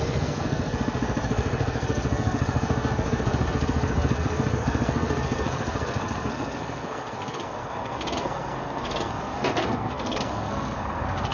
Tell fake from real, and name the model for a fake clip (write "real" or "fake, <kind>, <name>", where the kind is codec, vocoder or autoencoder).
fake, codec, SNAC